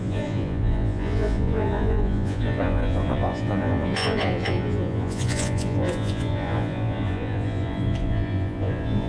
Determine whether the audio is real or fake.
fake